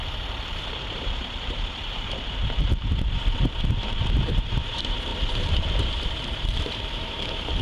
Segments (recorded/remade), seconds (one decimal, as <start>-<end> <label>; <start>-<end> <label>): 0.0-0.5 recorded; 0.5-2.4 remade; 2.4-4.2 recorded; 4.2-7.6 remade